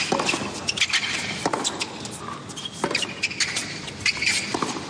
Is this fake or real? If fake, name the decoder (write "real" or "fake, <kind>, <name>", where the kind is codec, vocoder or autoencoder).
real